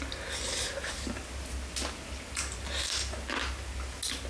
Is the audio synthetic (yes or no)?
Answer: no